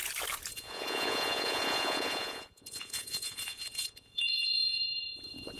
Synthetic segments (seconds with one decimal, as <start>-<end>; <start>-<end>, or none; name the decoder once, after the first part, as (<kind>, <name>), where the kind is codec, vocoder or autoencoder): 0.5-5.6 (vocoder, Vocos)

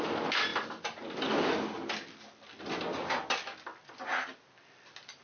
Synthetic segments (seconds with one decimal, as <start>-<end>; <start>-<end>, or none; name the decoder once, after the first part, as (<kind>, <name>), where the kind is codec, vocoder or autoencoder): none

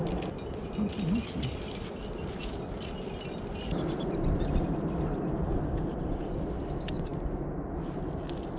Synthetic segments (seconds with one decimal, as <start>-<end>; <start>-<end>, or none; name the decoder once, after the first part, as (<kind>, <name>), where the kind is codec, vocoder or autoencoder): none

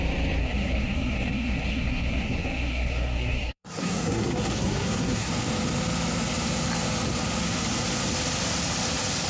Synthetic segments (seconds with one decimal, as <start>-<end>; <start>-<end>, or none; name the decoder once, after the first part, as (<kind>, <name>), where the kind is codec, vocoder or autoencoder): 0.4-5.3 (codec, SNAC)

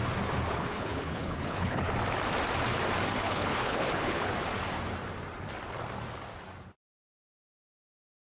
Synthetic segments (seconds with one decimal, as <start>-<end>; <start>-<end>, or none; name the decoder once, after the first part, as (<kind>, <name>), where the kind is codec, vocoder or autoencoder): 0.5-1.9 (codec, HILCodec); 3.1-4.3

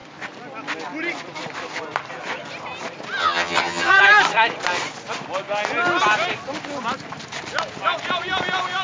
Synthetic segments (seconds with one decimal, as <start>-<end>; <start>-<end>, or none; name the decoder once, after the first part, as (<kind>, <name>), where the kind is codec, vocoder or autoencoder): 3.2-3.9 (vocoder, HiFi-GAN)

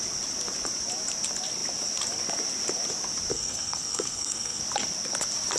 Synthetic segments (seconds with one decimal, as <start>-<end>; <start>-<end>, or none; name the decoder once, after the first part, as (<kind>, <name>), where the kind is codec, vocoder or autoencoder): 3.3-4.6 (codec, SNAC)

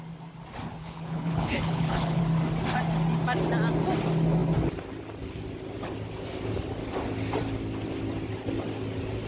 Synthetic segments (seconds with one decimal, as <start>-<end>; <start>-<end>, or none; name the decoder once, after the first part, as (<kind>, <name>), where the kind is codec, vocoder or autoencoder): 0.8-2.2 (codec, HILCodec)